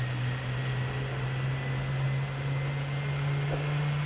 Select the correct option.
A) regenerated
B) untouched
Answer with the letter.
B